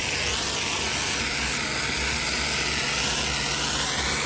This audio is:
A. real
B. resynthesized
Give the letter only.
A